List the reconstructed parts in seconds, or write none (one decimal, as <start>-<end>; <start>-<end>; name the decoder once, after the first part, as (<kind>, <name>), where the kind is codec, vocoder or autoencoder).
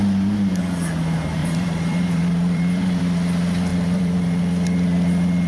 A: 1.4-3.0 (vocoder, BigVGAN v2); 3.7-4.4